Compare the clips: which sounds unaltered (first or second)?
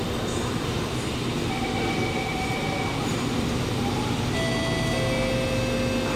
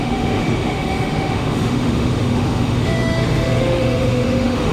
first